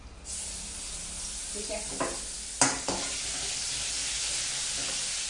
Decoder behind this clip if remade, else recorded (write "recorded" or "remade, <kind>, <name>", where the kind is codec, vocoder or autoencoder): recorded